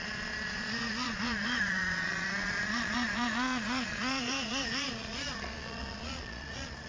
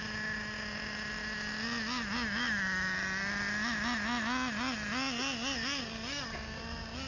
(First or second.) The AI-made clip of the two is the first